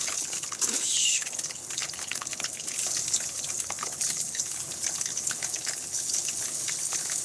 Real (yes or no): no